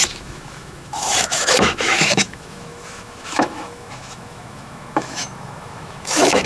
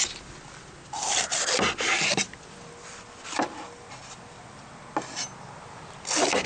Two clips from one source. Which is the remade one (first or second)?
first